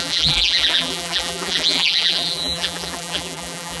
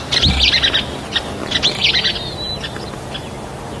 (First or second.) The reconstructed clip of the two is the first